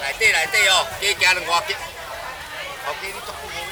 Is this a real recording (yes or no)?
yes